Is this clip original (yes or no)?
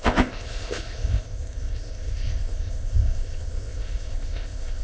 no